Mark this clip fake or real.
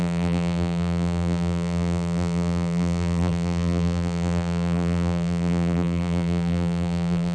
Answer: fake